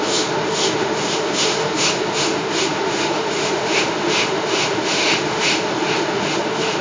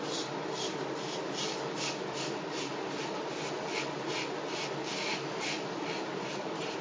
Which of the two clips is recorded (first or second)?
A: second